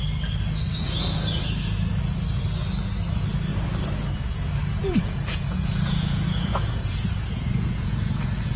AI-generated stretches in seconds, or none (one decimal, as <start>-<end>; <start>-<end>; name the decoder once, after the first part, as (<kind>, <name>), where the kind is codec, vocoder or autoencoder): 4.8-8.6 (vocoder, Vocos)